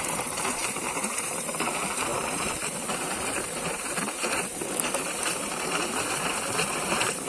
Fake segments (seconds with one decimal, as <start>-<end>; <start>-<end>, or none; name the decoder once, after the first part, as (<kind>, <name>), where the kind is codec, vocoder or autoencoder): 0.0-7.3 (vocoder, BigVGAN v2)